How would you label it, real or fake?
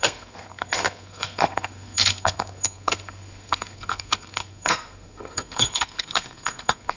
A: fake